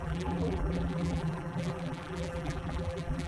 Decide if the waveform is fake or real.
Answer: fake